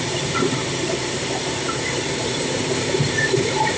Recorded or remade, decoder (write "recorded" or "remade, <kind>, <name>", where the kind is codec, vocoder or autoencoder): remade, vocoder, BigVGAN v2